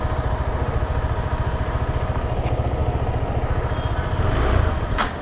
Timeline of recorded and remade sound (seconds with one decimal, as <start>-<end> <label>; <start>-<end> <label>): 0.0-5.2 recorded